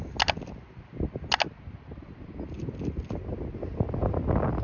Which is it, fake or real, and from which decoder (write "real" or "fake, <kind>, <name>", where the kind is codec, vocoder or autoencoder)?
real